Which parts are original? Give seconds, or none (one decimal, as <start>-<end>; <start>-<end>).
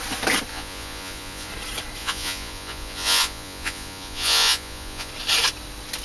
0.0-0.5; 1.5-2.0; 5.1-6.0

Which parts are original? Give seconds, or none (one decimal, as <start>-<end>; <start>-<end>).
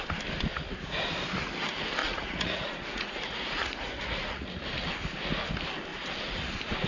0.0-2.0; 4.9-5.9; 6.5-6.9